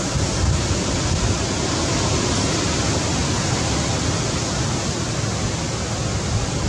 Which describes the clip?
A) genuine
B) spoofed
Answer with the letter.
A